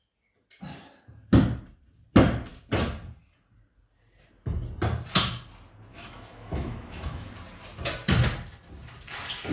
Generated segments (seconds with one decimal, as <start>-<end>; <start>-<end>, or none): 5.9-7.3